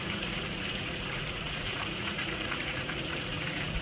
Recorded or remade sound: remade